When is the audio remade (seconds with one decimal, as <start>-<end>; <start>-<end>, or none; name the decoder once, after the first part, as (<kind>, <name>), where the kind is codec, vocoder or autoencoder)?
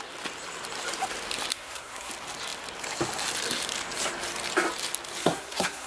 1.5-2.1 (codec, SNAC); 5.2-5.9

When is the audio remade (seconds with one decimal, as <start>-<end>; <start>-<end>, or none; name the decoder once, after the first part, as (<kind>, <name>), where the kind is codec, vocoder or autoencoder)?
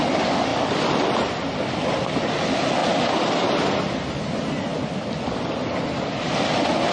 2.8-3.5 (vocoder, BigVGAN v2); 4.7-5.5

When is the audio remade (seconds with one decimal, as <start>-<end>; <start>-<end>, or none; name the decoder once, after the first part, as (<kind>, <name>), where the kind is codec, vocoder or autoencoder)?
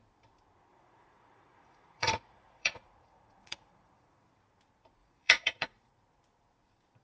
0.7-4.3 (vocoder, Vocos); 5.0-5.9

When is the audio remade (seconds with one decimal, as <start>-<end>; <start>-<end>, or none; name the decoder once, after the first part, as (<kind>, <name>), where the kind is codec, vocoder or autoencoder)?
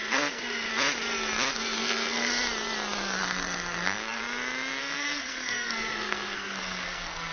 0.0-0.7 (codec, SNAC); 1.5-2.3; 3.2-4.2; 4.8-7.3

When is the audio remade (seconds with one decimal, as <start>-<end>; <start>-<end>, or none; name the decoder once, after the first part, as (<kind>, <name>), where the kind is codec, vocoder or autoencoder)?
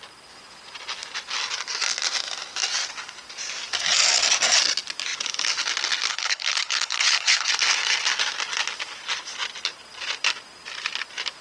6.1-7.5 (codec, HILCodec)